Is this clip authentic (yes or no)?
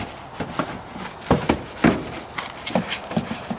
yes